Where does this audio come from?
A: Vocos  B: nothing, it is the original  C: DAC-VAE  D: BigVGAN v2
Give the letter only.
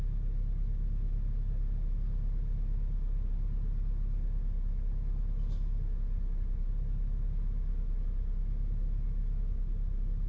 B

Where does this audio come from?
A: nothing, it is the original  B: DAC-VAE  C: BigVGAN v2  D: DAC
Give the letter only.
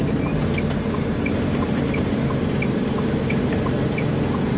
A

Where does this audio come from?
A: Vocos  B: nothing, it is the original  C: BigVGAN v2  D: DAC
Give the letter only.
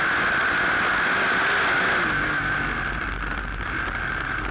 B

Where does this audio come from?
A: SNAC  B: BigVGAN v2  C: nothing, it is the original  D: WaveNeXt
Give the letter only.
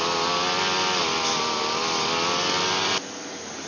C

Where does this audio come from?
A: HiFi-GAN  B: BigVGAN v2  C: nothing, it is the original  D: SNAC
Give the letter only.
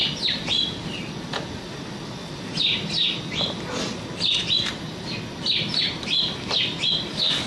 C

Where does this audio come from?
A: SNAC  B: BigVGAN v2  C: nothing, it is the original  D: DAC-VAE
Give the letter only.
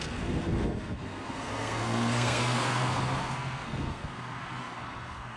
A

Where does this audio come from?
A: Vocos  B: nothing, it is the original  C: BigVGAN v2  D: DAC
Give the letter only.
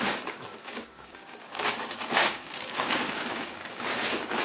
D